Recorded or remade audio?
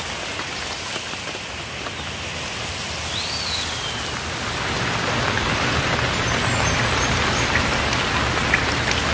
recorded